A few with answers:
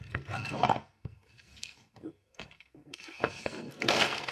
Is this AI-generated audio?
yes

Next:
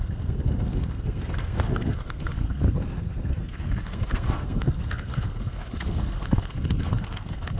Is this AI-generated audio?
yes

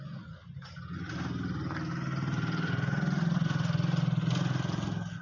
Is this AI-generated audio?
no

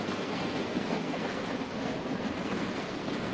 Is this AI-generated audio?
yes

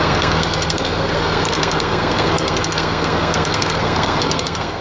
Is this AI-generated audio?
yes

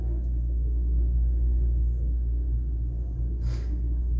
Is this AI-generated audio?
yes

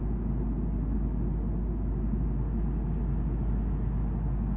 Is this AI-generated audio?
no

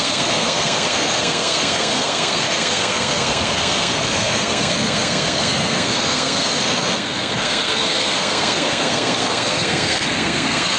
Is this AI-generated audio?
yes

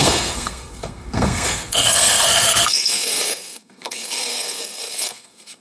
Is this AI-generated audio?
yes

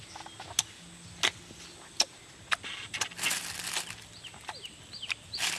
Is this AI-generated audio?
no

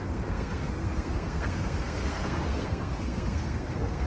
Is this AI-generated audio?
yes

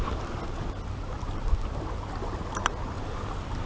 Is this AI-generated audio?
no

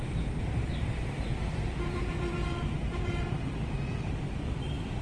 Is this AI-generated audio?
no